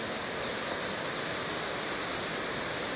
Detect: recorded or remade recorded